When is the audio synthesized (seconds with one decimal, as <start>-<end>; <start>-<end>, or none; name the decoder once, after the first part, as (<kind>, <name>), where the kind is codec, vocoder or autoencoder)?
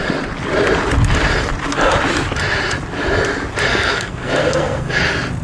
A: 3.7-5.0 (codec, SNAC)